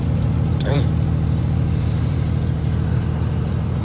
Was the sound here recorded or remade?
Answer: remade